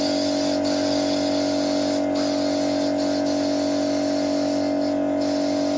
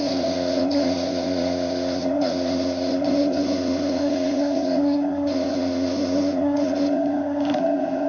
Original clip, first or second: first